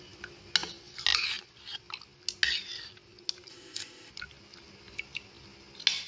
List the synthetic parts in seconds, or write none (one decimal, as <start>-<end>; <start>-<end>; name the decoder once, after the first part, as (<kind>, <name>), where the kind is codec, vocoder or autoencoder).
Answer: 3.5-4.1 (codec, ZipCodec)